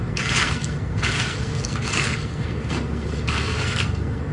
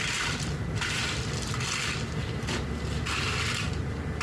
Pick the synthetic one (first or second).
first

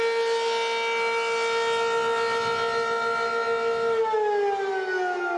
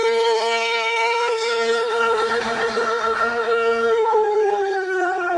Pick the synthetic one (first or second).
second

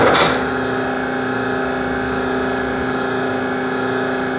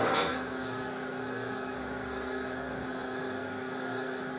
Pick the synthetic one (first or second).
second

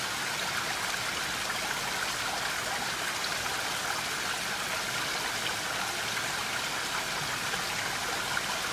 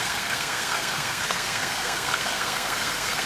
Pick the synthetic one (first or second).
second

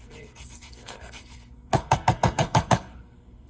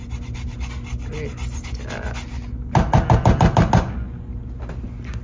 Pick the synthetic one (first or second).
first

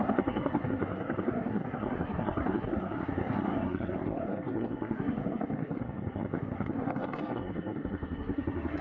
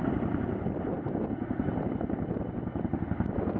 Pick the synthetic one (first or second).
first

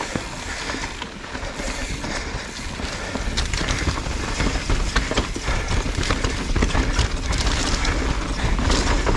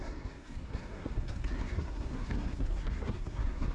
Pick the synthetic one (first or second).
second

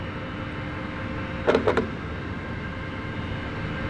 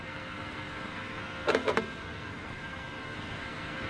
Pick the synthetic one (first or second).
second